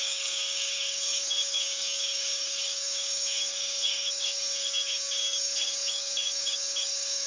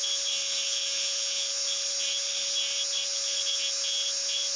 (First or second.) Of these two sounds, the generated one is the first